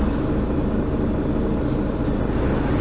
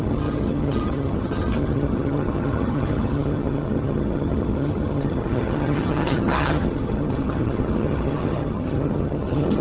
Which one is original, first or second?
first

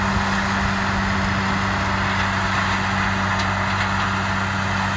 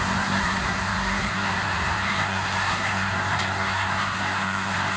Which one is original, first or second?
first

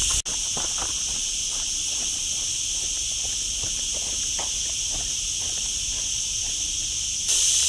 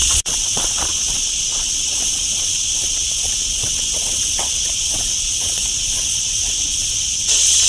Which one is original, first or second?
first